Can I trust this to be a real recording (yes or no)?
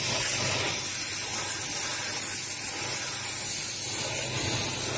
yes